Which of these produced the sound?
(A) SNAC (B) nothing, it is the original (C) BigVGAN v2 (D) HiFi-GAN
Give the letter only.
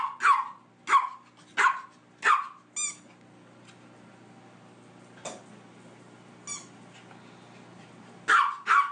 B